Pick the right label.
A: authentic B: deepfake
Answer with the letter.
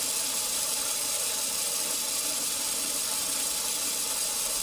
B